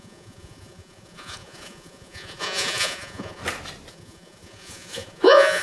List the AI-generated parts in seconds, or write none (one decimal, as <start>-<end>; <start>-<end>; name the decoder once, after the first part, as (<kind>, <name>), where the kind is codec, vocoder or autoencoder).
0.0-3.4 (vocoder, Vocos); 3.9-5.6